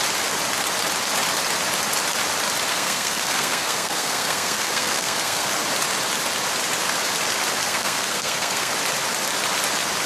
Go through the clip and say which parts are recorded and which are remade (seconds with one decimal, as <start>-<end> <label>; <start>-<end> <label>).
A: 0.0-2.7 recorded; 2.7-5.5 remade; 5.5-7.6 recorded; 7.6-8.7 remade; 8.7-10.1 recorded